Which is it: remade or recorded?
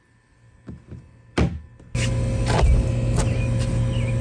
recorded